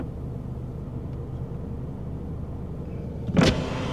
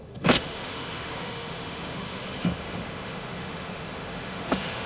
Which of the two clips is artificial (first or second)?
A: second